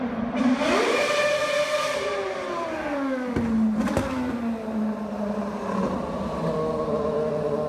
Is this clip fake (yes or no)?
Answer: no